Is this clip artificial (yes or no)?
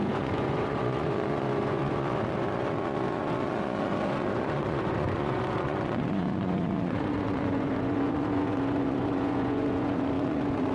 yes